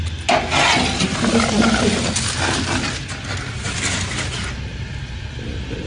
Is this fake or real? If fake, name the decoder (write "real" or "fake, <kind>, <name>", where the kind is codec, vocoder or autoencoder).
real